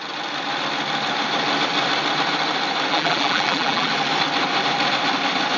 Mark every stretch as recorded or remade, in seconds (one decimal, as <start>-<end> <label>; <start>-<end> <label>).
0.0-2.9 recorded; 2.9-3.9 remade; 3.9-5.6 recorded